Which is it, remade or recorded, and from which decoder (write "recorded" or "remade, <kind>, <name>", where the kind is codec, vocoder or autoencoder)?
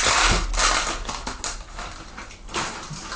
recorded